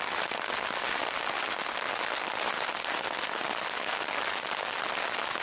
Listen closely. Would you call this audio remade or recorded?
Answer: recorded